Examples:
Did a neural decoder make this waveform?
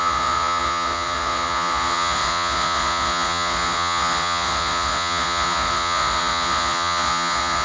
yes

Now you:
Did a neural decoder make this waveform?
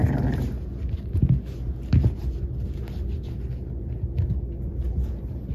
no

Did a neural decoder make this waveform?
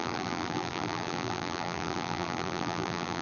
yes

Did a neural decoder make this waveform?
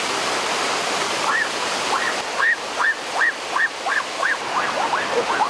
no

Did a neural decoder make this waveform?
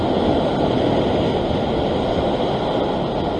no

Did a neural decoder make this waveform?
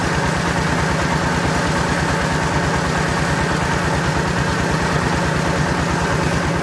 no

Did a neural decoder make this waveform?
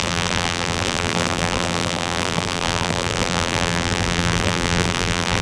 yes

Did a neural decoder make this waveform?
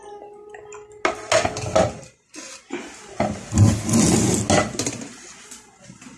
no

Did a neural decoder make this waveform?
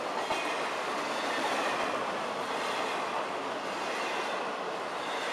no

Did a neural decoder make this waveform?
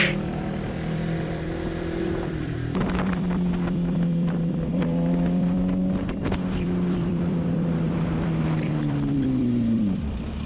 yes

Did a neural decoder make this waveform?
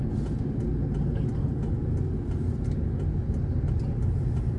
no